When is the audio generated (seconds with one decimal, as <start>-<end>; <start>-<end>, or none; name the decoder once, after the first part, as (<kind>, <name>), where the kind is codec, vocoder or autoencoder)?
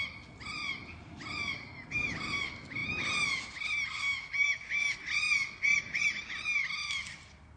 none